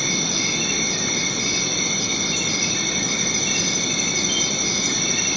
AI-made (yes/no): no